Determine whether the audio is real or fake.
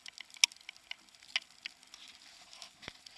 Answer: real